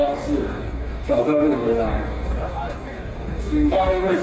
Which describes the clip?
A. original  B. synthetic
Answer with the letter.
B